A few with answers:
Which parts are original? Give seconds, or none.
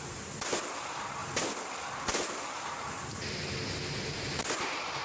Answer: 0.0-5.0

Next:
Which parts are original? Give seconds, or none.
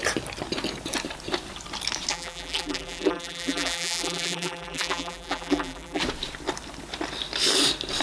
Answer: 0.0-2.1; 6.0-8.0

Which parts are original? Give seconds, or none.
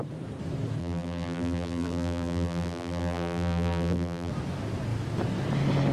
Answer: 0.0-0.8; 4.3-5.9